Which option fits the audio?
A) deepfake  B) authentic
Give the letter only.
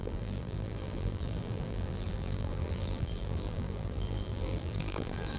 A